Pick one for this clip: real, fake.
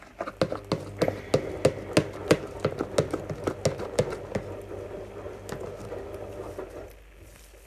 real